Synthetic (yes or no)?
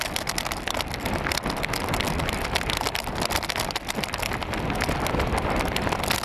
no